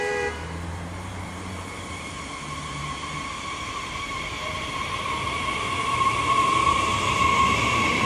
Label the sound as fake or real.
fake